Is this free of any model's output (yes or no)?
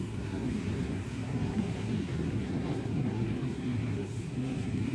no